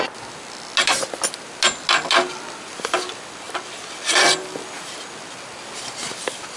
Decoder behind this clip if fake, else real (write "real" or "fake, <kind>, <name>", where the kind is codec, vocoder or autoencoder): real